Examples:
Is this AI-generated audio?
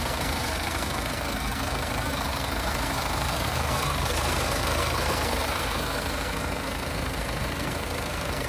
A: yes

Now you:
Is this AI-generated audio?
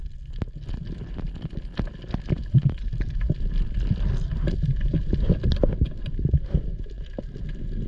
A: no